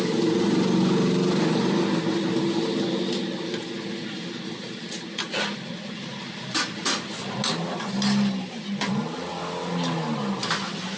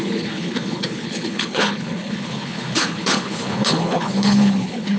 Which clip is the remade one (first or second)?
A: second